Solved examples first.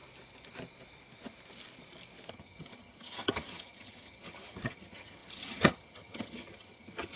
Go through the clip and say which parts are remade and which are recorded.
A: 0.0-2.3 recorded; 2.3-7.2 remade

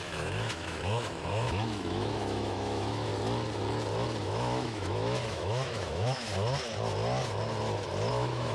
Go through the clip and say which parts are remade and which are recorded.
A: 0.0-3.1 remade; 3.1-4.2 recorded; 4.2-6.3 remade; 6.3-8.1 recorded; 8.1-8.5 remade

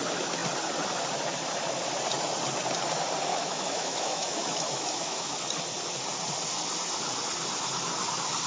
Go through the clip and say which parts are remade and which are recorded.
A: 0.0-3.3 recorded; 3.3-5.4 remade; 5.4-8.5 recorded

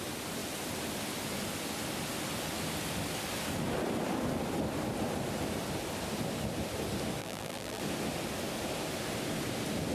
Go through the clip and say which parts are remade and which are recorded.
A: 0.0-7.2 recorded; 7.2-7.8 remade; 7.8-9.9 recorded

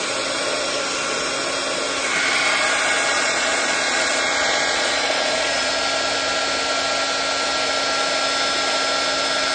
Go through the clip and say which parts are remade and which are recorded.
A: 0.0-3.1 recorded; 3.1-5.7 remade; 5.7-9.5 recorded

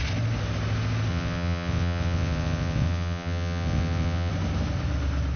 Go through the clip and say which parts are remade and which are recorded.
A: 0.0-1.1 recorded; 1.1-4.3 remade; 4.3-5.4 recorded

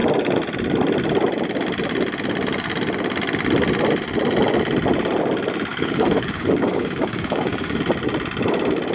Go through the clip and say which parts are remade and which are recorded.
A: 0.0-5.7 recorded; 5.7-7.8 remade; 7.8-8.9 recorded

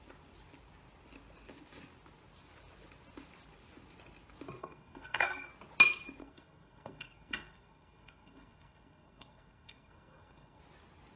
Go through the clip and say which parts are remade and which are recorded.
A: 0.0-4.6 recorded; 4.6-5.5 remade; 5.5-6.2 recorded; 6.2-10.6 remade; 10.6-11.2 recorded